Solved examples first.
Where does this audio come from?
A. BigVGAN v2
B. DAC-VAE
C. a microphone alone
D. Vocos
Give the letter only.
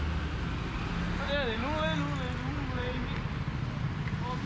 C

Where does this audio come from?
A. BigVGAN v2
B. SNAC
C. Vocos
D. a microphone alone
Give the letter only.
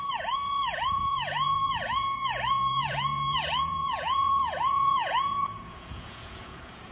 C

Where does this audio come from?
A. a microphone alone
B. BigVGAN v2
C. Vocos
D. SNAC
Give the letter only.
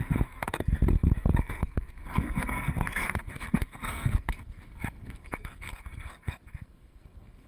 D